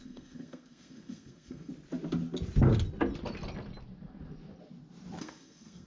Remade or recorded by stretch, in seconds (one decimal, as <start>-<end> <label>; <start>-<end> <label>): 0.0-1.7 remade; 1.7-5.2 recorded; 5.2-5.9 remade